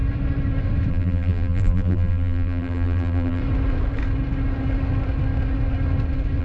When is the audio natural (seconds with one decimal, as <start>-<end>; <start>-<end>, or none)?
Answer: 0.0-0.9; 3.4-6.4